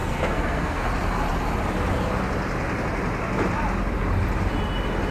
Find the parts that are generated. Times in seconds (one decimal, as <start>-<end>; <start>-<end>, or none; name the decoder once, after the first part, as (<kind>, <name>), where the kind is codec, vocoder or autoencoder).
0.0-0.9 (codec, SNAC)